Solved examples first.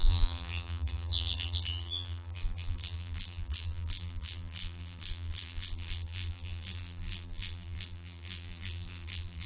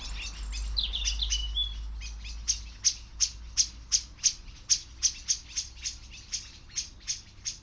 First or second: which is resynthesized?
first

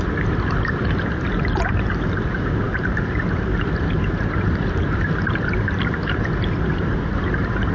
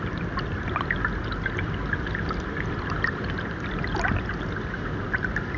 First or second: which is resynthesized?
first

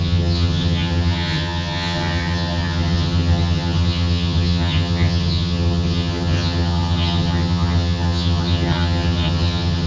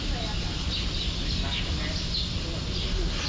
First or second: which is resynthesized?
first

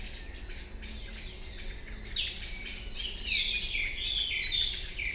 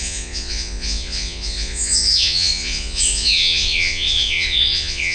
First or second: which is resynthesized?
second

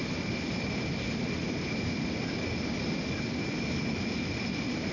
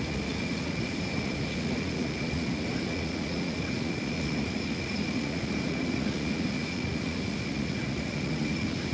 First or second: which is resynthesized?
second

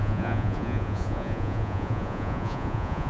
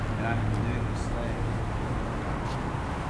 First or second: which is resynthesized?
first